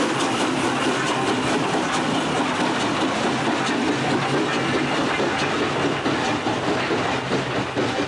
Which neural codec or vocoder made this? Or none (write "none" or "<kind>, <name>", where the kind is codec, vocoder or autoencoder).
none